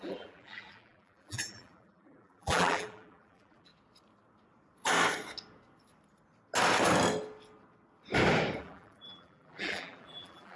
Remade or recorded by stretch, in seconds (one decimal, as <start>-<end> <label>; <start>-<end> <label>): 0.0-3.7 remade; 3.7-8.6 recorded; 8.6-10.6 remade